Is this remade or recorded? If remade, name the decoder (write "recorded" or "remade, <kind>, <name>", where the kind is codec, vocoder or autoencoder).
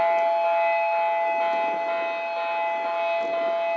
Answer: recorded